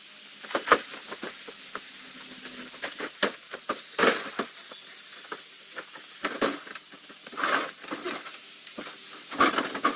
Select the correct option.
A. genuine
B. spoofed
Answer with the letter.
A